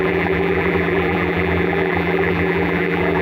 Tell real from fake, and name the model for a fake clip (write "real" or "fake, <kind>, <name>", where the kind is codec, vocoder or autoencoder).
fake, vocoder, BigVGAN v2